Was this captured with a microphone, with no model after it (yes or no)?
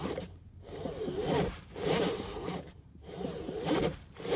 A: no